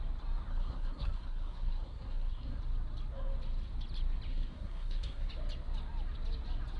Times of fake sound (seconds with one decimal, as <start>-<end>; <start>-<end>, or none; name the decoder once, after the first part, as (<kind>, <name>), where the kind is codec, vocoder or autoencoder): 0.5-2.6 (codec, SNAC); 4.3-5.3